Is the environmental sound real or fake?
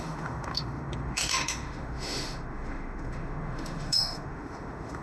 fake